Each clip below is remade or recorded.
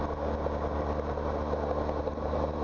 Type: recorded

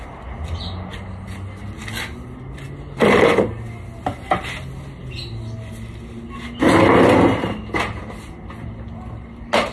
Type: recorded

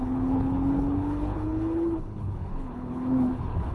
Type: remade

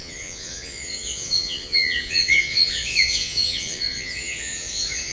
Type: remade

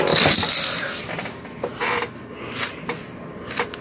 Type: recorded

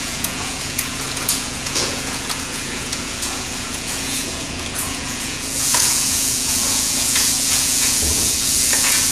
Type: remade